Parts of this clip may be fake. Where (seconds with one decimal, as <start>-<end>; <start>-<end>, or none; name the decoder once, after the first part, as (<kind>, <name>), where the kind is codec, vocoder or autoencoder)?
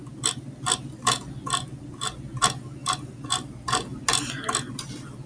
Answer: none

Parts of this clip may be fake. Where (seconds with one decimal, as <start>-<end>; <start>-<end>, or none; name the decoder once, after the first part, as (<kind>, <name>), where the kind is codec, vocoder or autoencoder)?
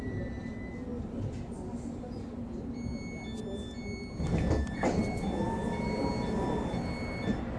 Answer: none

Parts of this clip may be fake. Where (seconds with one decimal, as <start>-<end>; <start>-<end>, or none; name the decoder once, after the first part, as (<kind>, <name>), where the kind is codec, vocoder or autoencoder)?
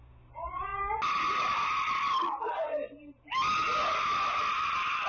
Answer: none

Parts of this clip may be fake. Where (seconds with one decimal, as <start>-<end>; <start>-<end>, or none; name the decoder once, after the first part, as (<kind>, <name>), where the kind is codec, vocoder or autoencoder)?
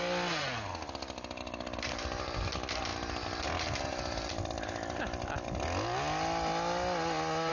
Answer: none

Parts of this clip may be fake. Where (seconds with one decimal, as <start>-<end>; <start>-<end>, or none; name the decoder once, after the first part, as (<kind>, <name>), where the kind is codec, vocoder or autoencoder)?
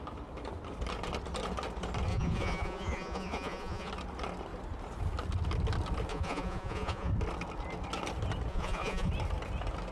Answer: 2.1-3.9 (vocoder, Vocos); 6.1-7.1; 8.5-9.1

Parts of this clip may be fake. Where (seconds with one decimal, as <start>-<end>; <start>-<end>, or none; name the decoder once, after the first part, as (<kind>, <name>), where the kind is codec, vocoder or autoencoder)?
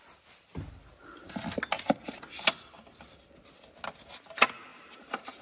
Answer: 4.7-5.4 (vocoder, BigVGAN v2)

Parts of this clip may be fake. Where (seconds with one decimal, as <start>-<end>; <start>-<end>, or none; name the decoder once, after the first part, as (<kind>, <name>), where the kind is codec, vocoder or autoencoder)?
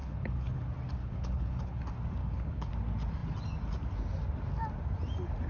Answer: 0.0-0.6 (codec, HILCodec); 1.0-1.8; 2.2-2.7